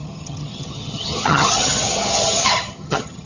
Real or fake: fake